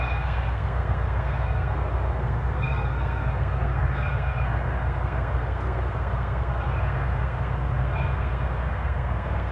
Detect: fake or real fake